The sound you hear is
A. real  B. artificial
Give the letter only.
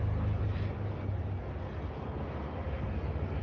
A